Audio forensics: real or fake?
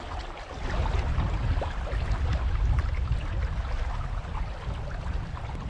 real